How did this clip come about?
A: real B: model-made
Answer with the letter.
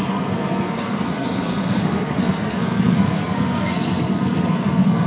B